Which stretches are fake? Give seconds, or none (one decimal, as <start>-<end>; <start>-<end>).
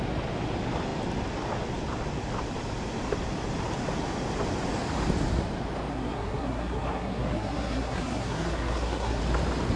5.9-9.2